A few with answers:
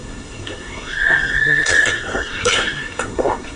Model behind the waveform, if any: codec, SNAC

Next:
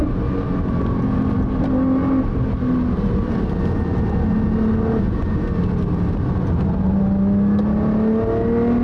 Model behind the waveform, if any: none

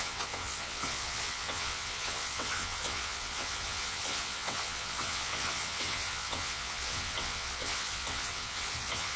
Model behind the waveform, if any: vocoder, WaveNeXt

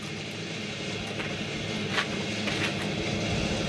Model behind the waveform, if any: none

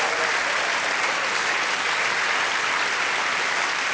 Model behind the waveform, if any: none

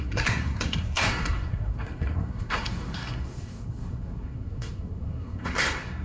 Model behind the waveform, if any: codec, SNAC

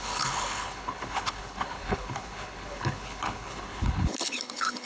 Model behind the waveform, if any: codec, HILCodec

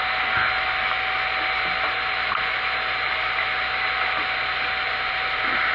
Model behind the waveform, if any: none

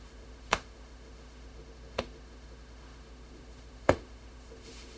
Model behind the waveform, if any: autoencoder, DAC-VAE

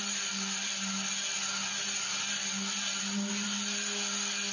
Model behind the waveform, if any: none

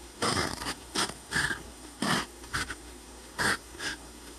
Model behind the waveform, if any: codec, SNAC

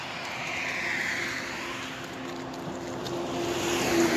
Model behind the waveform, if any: none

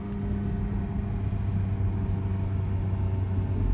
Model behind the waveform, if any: none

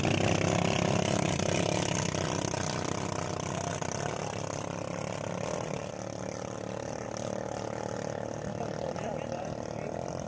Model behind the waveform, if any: none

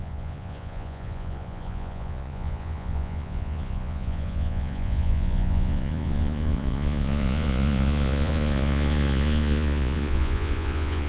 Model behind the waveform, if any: vocoder, Vocos